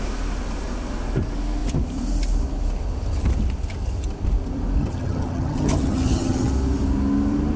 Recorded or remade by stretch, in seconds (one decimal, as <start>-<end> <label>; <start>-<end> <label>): 0.0-4.8 recorded; 4.8-6.5 remade; 6.5-7.6 recorded